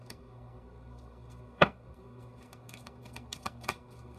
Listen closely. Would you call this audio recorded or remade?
remade